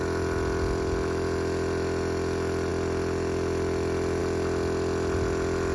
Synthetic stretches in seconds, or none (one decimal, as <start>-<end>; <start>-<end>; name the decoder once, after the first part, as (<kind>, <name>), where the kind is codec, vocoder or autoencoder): none